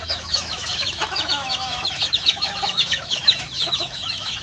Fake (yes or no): yes